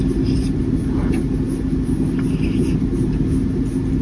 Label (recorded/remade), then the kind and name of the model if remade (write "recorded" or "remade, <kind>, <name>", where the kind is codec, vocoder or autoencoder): recorded